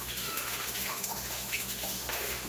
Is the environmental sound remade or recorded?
remade